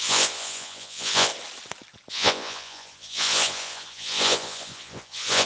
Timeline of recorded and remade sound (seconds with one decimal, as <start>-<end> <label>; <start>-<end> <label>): 0.0-1.3 remade; 1.3-2.1 recorded; 2.1-5.5 remade

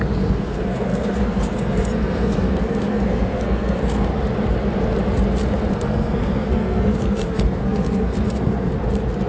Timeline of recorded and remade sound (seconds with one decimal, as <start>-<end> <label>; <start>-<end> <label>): 0.0-4.1 remade; 4.1-5.7 recorded; 5.7-8.7 remade; 8.7-9.3 recorded

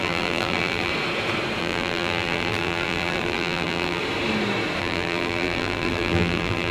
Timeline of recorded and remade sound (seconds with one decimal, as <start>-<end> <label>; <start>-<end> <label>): 0.0-0.9 remade; 0.9-1.6 recorded; 1.6-4.0 remade; 4.0-4.8 recorded; 4.8-6.7 remade

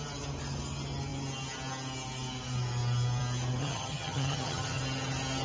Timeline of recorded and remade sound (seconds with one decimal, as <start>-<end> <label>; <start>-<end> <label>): 0.0-3.6 recorded; 3.6-4.8 remade; 4.8-5.4 recorded

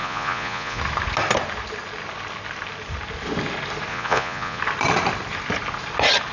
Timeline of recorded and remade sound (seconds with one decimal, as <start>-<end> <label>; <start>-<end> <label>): 0.0-0.8 remade; 0.8-3.9 recorded; 3.9-4.6 remade; 4.6-6.3 recorded

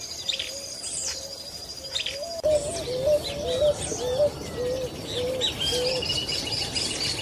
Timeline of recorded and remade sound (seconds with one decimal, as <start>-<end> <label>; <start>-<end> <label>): 0.0-2.7 remade; 2.7-7.2 recorded

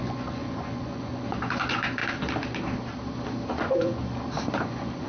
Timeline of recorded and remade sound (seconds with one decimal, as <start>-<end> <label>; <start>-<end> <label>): 0.0-2.0 remade; 2.0-3.5 recorded; 3.5-4.0 remade; 4.0-4.6 recorded; 4.6-5.1 remade

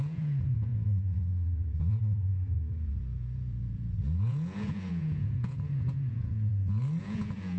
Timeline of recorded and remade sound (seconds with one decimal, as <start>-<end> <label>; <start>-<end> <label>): 0.0-6.5 remade; 6.5-7.0 recorded; 7.0-7.6 remade